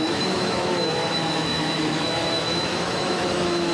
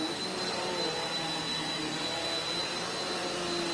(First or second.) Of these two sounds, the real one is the second